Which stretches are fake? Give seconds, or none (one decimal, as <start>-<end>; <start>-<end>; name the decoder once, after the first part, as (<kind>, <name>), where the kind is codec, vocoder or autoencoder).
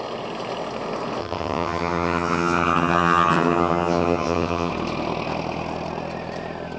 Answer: 1.2-4.7 (vocoder, HiFi-GAN)